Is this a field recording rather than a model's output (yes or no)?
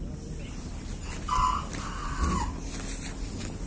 yes